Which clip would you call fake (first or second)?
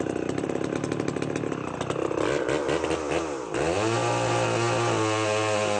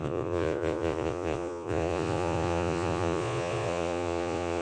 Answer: second